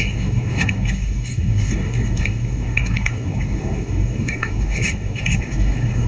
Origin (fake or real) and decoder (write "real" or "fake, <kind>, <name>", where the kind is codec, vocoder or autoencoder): fake, codec, SNAC